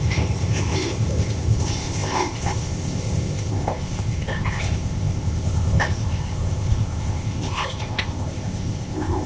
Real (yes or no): no